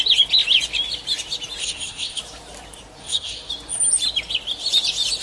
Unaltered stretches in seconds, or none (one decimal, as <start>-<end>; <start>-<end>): 0.0-1.6; 2.2-3.0; 3.5-5.2